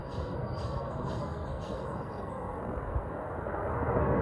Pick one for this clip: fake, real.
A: fake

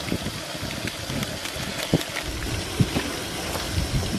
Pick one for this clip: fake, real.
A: real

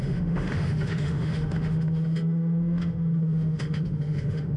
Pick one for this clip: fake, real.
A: fake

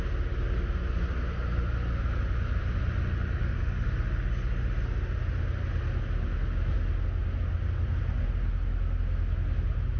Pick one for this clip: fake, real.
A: real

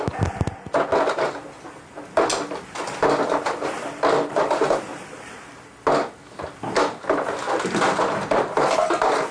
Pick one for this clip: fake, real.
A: real